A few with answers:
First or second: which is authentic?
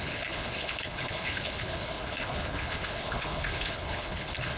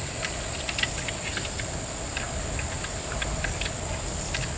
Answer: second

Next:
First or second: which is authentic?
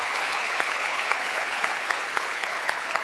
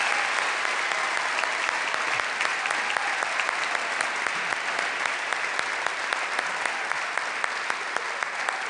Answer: second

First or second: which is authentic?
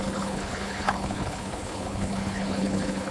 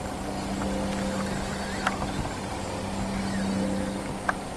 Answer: second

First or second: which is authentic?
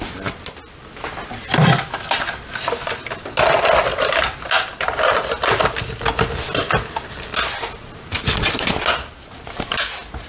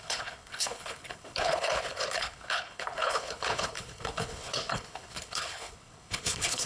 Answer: first